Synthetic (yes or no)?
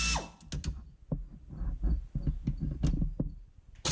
no